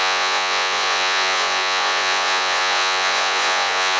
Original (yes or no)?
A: no